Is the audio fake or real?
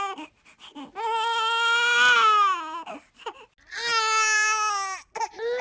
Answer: real